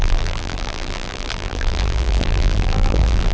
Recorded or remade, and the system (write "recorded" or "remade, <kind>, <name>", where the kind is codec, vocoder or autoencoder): remade, vocoder, BigVGAN v2